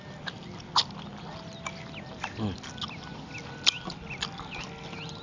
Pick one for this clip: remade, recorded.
recorded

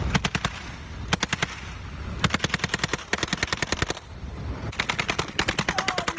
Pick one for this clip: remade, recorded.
recorded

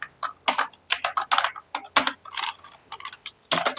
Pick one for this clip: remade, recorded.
recorded